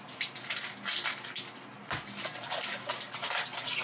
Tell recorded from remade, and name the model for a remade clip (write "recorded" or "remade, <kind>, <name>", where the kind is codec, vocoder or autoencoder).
recorded